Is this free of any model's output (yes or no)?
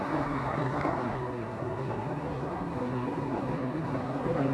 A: no